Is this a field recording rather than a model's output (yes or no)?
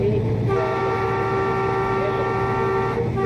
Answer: yes